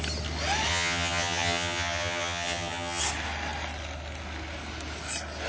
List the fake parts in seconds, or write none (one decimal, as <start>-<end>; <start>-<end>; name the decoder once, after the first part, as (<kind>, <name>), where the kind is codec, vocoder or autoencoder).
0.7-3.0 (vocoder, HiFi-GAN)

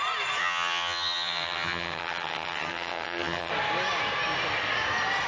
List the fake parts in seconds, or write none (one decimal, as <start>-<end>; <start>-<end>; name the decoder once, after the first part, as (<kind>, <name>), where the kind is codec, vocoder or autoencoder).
0.4-3.5 (vocoder, HiFi-GAN)

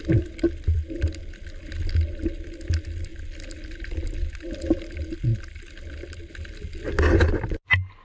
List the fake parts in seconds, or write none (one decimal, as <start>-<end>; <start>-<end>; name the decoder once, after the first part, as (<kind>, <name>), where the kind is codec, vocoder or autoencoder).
none